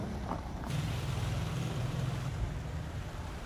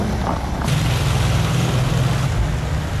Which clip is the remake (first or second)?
first